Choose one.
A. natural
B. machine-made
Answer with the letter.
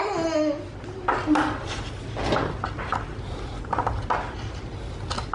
A